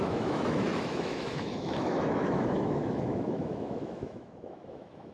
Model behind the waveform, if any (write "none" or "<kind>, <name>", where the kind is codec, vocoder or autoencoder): autoencoder, DAC-VAE